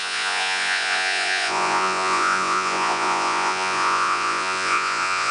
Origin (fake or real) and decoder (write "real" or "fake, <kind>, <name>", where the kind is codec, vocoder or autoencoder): fake, vocoder, Vocos